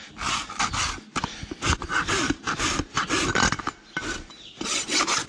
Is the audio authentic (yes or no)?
yes